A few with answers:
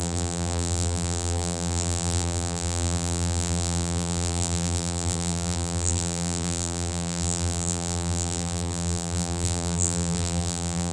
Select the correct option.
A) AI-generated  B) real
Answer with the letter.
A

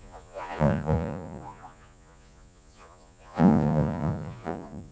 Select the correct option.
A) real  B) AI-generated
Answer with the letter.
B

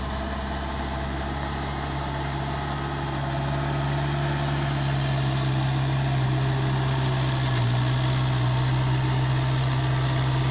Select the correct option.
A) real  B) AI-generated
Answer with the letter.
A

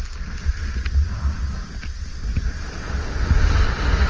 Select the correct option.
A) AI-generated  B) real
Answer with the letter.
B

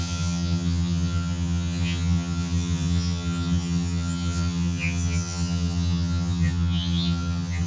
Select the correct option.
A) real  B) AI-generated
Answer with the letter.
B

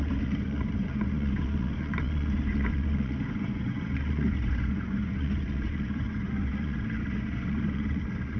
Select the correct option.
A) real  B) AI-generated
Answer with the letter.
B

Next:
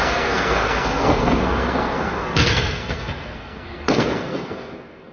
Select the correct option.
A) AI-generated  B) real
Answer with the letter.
A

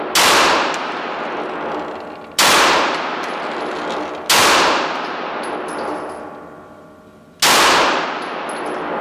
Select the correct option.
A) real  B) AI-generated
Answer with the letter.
A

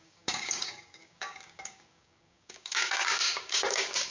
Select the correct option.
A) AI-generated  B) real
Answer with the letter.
A